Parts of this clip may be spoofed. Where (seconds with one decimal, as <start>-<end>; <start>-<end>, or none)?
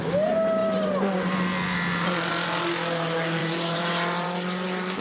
3.4-5.0